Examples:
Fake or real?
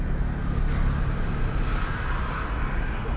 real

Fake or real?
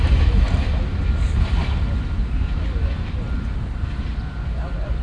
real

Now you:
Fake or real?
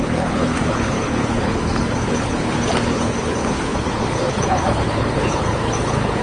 fake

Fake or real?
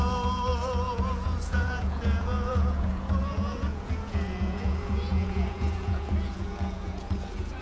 fake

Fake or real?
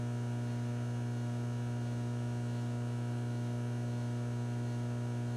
real